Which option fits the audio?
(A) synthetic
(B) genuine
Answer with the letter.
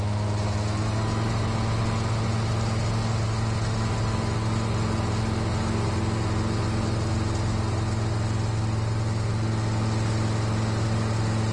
B